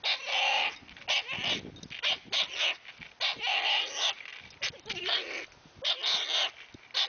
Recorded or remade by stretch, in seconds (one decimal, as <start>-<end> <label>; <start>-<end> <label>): 0.0-4.3 recorded; 4.3-5.0 remade; 5.0-7.1 recorded